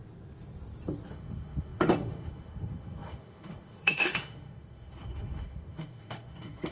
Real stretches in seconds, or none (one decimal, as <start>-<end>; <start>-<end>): 0.0-1.1